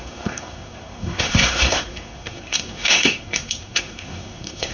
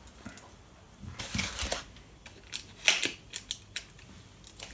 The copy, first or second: first